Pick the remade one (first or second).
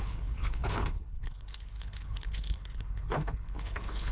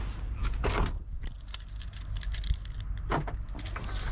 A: first